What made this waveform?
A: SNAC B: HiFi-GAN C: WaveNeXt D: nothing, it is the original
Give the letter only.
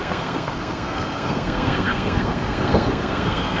A